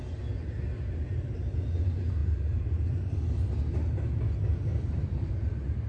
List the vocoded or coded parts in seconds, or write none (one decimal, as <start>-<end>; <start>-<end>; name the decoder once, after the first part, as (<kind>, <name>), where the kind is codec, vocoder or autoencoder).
2.2-3.1 (vocoder, BigVGAN v2); 4.7-5.9